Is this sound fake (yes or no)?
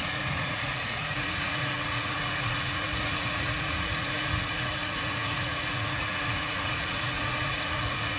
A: yes